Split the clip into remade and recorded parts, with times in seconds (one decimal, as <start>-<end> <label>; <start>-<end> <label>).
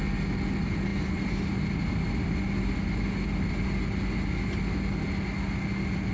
0.0-6.1 recorded